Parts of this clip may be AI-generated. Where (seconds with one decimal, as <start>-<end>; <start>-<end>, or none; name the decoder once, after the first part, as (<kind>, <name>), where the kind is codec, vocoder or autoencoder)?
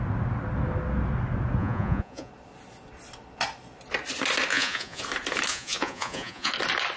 1.6-2.3 (vocoder, Vocos); 4.5-5.0; 5.5-6.5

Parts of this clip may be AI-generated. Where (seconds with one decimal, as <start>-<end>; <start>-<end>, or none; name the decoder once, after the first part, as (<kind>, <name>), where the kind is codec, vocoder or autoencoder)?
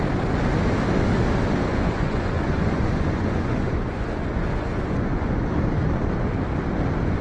1.7-5.5 (vocoder, Vocos)